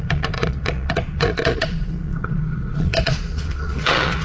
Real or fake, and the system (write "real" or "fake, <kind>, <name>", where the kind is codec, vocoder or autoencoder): fake, vocoder, Vocos